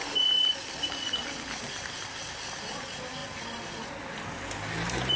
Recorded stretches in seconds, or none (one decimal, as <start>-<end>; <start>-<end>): 0.0-5.2